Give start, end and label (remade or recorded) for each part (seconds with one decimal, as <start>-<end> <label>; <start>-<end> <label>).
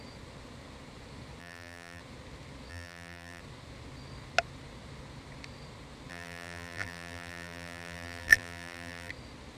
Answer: 0.0-1.4 recorded; 1.4-2.0 remade; 2.0-2.7 recorded; 2.7-3.4 remade; 3.4-6.1 recorded; 6.1-9.1 remade; 9.1-9.6 recorded